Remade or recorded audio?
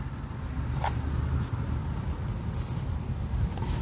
recorded